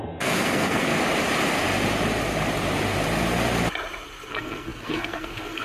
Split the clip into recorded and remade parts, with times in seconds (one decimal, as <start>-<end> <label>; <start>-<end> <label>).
0.0-0.9 remade; 0.9-4.3 recorded; 4.3-5.6 remade